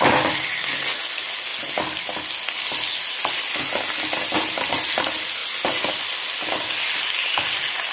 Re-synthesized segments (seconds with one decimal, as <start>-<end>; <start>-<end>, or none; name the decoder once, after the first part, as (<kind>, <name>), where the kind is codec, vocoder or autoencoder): none